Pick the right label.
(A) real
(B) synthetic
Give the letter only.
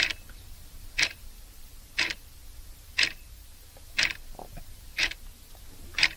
B